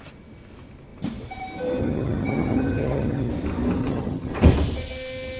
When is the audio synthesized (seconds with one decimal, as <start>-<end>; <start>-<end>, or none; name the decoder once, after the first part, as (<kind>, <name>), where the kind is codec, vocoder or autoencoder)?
1.8-3.3 (vocoder, HiFi-GAN); 3.8-4.3